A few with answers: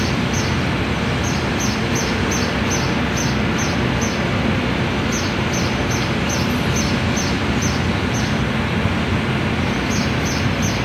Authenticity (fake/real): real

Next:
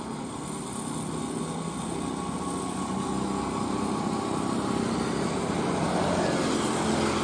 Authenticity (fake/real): real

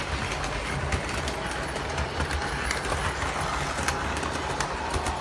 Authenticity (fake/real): real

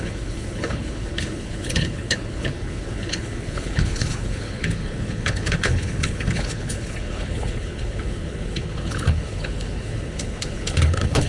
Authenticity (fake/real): fake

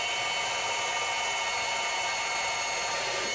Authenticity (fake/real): real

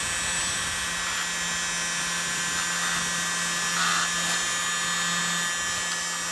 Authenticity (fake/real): real